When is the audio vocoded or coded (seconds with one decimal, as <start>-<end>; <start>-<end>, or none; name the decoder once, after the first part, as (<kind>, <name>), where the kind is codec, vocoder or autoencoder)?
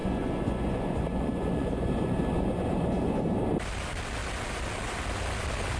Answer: 0.0-3.2 (vocoder, Vocos)